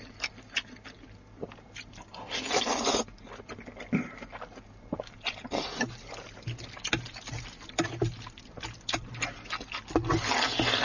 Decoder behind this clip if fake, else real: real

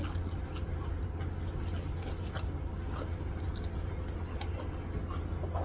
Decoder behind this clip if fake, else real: real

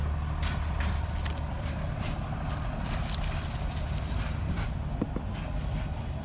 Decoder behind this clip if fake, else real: real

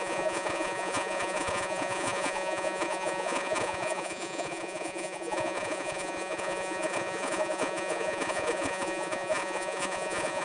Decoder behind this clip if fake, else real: fake, vocoder, Vocos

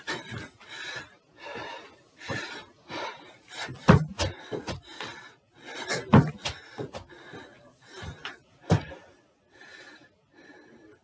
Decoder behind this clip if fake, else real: real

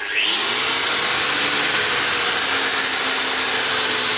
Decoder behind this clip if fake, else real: real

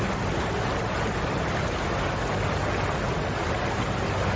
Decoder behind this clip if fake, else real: real